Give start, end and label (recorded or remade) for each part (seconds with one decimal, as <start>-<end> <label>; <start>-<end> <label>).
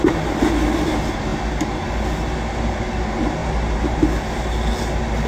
0.0-3.4 recorded; 3.4-4.0 remade; 4.0-5.3 recorded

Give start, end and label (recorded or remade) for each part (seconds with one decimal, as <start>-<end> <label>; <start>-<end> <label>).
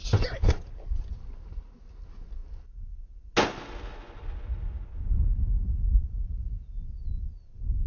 0.0-7.9 recorded